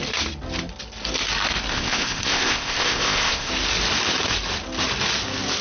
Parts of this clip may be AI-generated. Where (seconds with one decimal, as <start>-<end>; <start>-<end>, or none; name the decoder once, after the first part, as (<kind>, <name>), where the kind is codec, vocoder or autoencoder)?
1.7-3.5 (codec, ZipCodec)